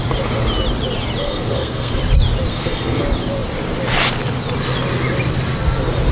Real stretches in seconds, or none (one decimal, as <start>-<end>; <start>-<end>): 0.0-1.2; 2.0-2.5; 3.0-6.1